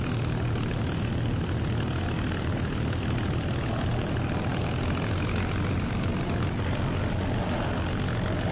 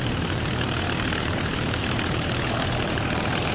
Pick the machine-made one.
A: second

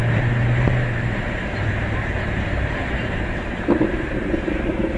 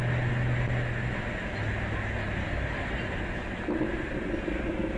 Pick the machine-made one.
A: first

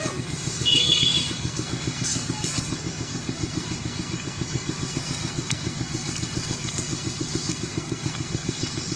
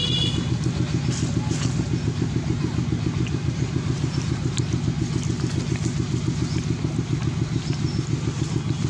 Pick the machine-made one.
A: first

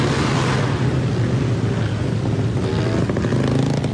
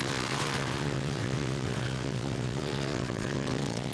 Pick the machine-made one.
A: second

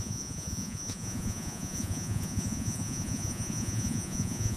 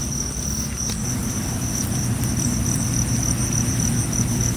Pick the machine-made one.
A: first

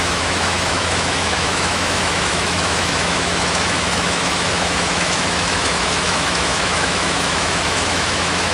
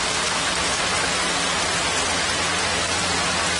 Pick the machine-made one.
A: first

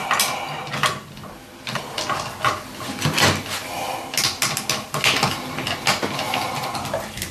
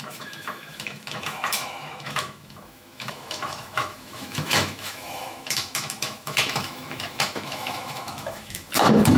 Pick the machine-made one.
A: second